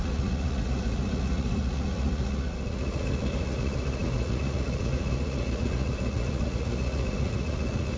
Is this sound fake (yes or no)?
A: yes